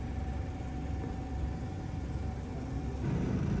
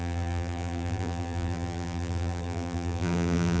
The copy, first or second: second